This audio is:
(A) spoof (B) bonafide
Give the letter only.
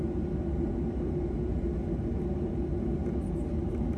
B